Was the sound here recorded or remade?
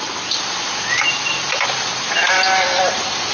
recorded